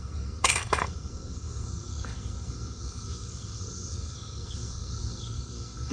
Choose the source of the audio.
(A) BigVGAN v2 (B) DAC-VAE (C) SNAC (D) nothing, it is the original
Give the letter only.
C